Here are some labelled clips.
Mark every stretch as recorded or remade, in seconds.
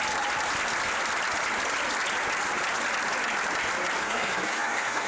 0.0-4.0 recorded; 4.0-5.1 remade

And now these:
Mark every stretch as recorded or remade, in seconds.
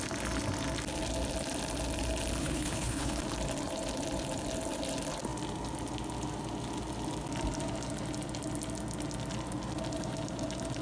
0.0-2.4 recorded; 2.4-3.2 remade; 3.2-10.8 recorded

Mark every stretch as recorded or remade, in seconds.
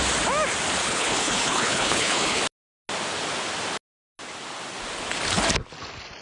0.0-0.8 recorded; 0.8-2.4 remade; 2.4-6.2 recorded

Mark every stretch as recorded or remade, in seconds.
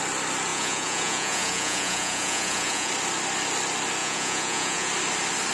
0.0-0.5 recorded; 0.5-2.9 remade; 2.9-4.0 recorded; 4.0-4.9 remade; 4.9-5.5 recorded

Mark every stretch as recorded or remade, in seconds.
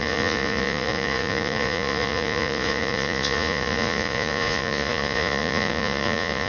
0.0-6.5 remade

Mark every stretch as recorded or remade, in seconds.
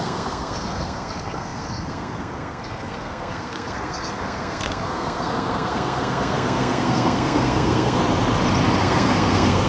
0.0-8.0 remade; 8.0-8.8 recorded; 8.8-9.7 remade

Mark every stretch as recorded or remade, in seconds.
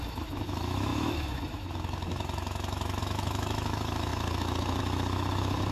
0.0-5.7 remade